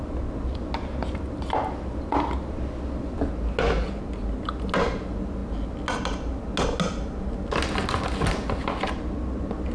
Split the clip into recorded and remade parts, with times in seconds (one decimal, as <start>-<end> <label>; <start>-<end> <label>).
0.0-9.7 recorded